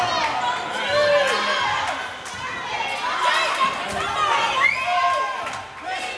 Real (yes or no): yes